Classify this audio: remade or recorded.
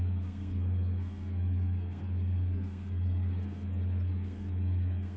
remade